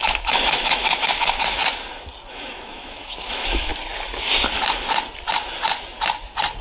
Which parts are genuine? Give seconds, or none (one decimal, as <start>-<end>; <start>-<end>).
1.6-2.3; 3.7-6.6